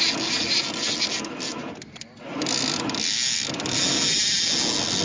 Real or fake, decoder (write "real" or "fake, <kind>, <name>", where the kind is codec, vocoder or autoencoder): real